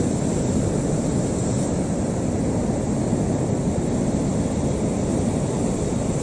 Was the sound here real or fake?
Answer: real